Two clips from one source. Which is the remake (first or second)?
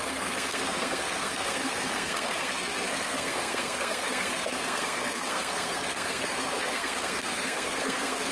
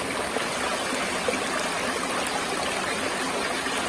first